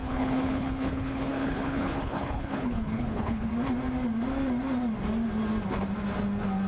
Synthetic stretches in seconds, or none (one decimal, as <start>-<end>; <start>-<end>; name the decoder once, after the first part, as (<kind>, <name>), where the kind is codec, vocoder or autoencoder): 0.0-3.5 (codec, HILCodec)